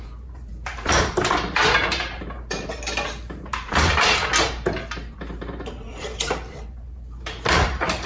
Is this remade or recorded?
remade